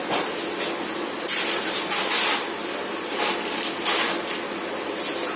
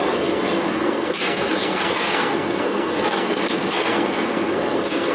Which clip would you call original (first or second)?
first